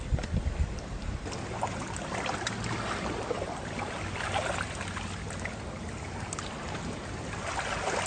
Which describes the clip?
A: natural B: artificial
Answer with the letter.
A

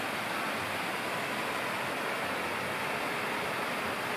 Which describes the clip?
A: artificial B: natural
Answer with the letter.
B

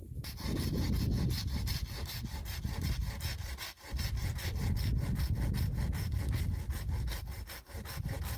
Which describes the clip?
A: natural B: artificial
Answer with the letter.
A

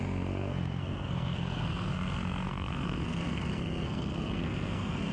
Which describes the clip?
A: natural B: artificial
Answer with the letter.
B